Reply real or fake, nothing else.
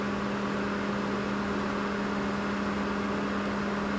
real